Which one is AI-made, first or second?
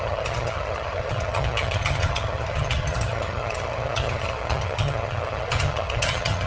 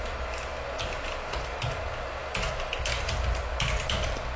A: first